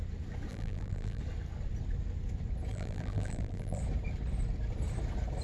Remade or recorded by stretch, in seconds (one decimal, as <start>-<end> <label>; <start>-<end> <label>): 0.0-0.5 recorded; 0.5-1.2 remade; 1.2-2.7 recorded; 2.7-3.8 remade; 3.8-5.4 recorded